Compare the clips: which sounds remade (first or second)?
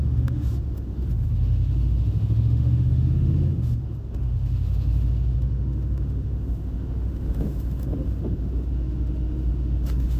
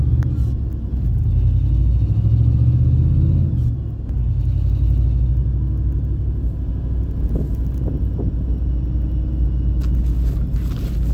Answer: first